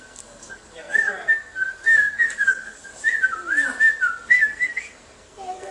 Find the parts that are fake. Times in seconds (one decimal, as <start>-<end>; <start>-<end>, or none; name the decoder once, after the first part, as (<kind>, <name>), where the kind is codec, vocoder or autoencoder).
0.0-2.9 (codec, SNAC); 4.3-5.7